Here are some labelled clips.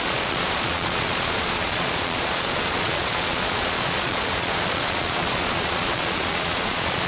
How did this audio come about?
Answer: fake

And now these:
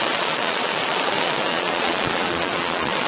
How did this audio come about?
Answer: fake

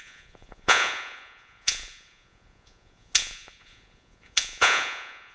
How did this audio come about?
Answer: fake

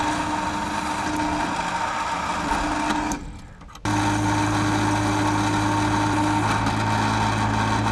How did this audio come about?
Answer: real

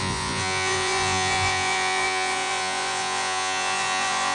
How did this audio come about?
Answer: fake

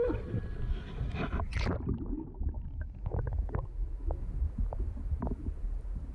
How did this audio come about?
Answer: real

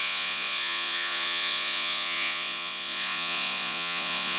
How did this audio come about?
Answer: fake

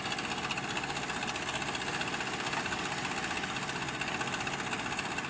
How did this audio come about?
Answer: real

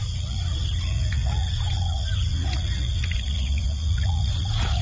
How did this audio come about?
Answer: fake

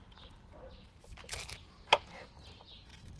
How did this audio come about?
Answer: real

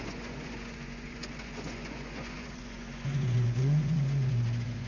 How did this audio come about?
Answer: fake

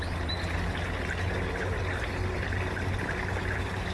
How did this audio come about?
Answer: real